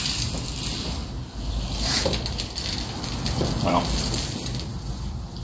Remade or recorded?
recorded